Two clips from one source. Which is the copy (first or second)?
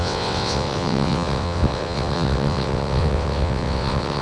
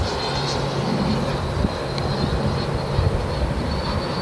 first